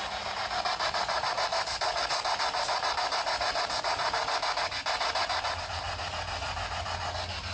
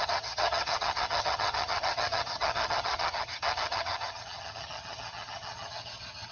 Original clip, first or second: first